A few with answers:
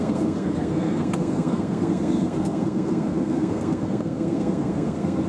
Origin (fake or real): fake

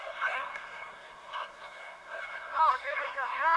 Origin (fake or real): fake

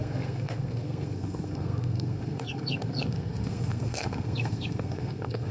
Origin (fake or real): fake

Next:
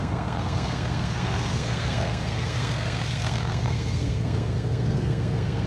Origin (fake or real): fake